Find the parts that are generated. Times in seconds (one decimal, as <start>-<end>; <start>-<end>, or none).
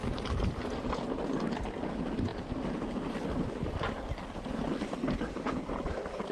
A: none